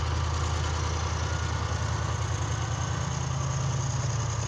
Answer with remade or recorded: recorded